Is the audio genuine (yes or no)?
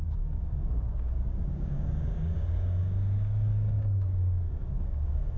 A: no